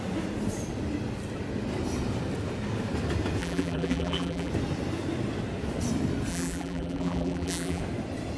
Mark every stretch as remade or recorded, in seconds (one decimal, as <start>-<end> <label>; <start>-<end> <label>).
0.0-3.4 recorded; 3.4-4.5 remade; 4.5-6.3 recorded; 6.3-7.8 remade; 7.8-8.4 recorded